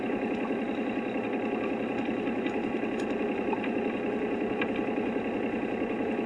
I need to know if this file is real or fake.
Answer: real